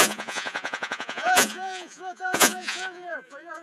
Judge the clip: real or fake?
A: fake